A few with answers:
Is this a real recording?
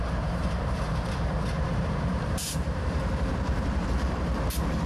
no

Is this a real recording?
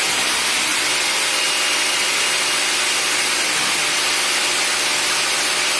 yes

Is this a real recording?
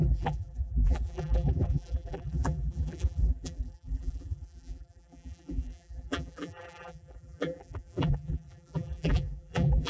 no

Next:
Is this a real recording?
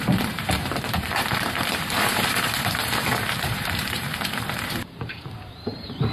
no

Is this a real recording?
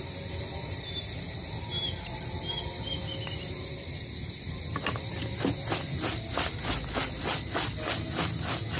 yes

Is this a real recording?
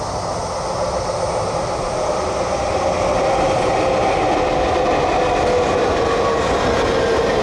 yes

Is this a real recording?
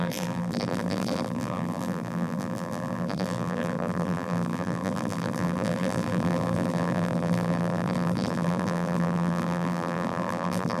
no